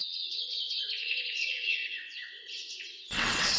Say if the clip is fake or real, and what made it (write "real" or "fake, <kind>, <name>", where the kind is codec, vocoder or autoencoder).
fake, vocoder, WaveNeXt